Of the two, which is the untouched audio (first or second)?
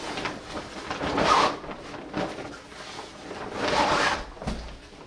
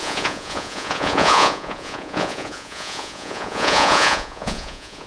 first